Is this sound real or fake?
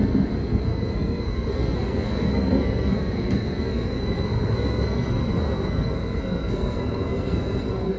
fake